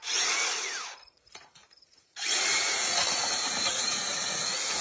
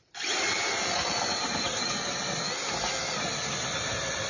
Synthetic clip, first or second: first